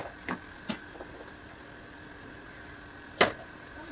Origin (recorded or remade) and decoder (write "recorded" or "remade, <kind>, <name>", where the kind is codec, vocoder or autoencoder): recorded